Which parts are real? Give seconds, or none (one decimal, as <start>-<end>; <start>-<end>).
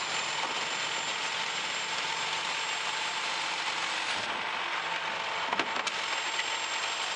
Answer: 0.0-1.1; 3.9-7.2